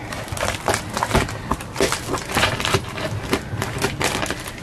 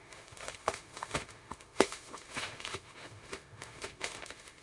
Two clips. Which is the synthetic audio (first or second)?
second